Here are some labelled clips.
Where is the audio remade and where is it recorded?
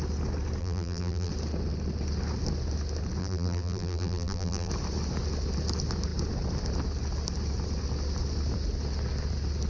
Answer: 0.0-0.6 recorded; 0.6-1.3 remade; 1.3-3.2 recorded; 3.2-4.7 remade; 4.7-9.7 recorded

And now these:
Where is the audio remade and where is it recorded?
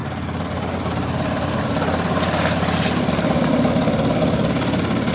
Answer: 0.0-5.1 recorded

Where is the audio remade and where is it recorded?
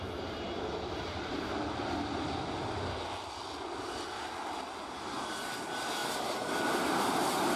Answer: 0.0-6.0 recorded; 6.0-6.5 remade; 6.5-7.6 recorded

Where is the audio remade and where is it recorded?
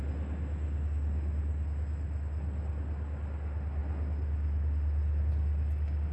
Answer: 0.0-6.1 recorded